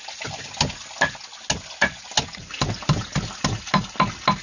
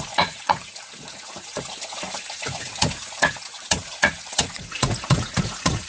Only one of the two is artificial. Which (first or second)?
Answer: second